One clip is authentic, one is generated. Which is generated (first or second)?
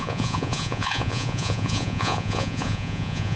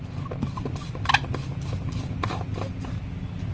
first